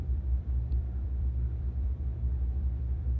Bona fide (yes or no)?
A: no